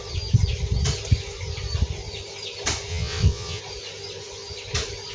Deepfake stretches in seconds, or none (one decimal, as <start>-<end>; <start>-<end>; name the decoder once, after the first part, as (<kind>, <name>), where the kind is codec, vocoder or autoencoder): 2.9-3.6 (vocoder, WaveNeXt)